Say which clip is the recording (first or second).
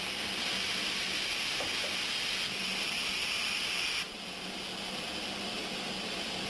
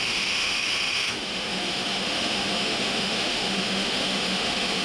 first